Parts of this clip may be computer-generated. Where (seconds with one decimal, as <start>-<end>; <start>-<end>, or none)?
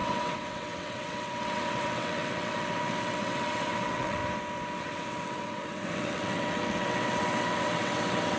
0.0-4.2; 4.8-8.4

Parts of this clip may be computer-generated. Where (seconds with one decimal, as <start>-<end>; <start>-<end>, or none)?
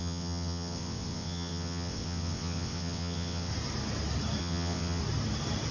0.0-3.5; 4.4-5.0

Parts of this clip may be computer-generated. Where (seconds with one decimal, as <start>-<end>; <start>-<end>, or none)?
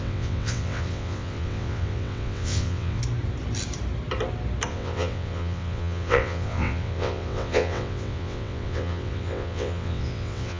0.0-3.0; 4.7-10.6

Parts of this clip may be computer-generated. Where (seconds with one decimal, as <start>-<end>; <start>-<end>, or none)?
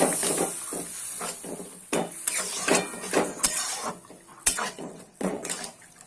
3.3-3.9; 4.3-5.5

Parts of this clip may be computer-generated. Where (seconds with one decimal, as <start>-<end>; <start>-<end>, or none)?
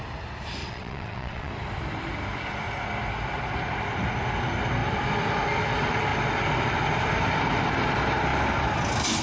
0.6-1.5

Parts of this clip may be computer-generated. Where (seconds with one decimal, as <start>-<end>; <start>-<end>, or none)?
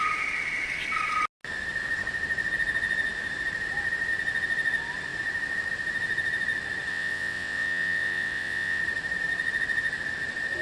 6.9-8.8